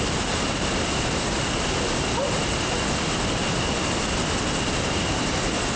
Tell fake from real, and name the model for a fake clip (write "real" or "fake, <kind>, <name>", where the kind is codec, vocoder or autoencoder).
real